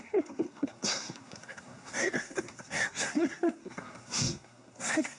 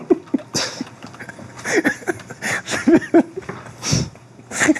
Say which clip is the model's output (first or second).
first